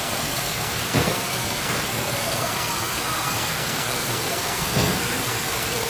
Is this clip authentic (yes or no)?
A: no